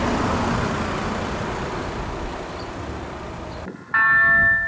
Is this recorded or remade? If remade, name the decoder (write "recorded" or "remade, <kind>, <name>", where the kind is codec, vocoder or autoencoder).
recorded